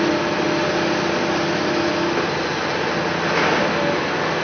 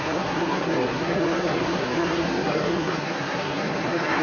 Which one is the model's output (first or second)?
second